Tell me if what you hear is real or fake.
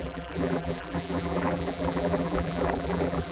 fake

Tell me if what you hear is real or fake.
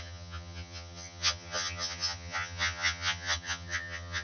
fake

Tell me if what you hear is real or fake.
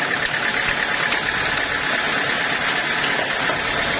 real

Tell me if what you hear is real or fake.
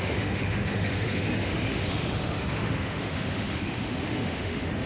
fake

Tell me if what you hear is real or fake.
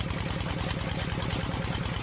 real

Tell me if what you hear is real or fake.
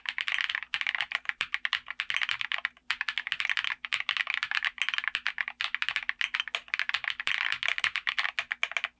real